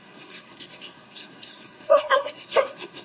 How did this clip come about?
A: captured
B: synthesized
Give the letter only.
B